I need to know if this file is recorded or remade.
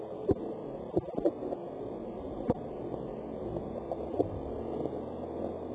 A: recorded